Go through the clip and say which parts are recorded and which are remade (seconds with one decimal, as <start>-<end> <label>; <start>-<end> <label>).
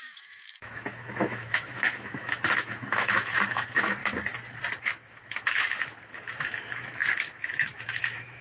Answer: 0.0-4.0 remade; 4.0-4.8 recorded; 4.8-8.4 remade